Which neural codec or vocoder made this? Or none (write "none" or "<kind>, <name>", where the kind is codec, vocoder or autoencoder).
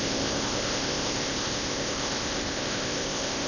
codec, ZipCodec